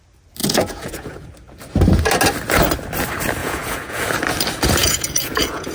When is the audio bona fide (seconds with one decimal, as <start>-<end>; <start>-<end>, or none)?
0.0-0.4; 1.3-3.4; 4.1-4.8